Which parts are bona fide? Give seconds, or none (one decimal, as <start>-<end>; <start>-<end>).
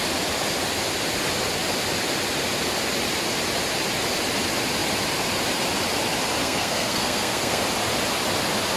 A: 0.0-6.4; 7.6-8.8